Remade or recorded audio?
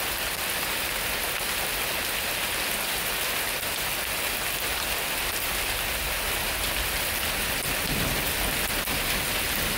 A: recorded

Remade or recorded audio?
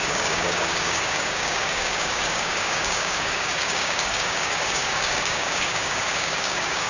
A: remade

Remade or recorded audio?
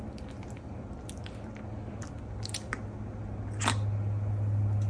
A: recorded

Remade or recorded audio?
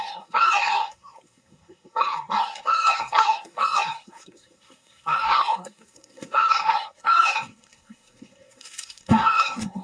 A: remade